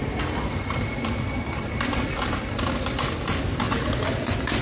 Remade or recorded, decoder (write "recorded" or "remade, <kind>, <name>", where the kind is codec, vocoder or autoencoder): recorded